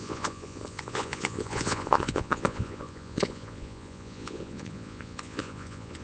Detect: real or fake fake